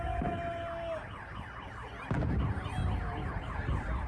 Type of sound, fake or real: real